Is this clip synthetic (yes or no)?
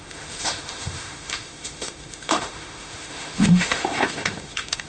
yes